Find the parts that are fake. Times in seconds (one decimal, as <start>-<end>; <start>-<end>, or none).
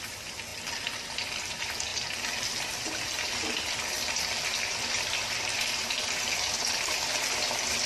none